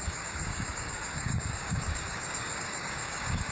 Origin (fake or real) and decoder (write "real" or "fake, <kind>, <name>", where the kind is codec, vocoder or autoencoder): fake, codec, DAC